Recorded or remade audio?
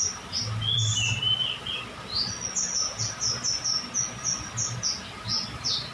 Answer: recorded